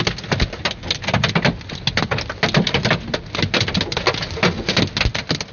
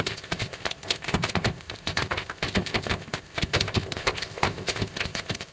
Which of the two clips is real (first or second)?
first